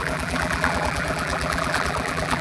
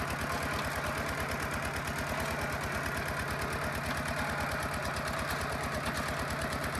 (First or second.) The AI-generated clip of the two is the first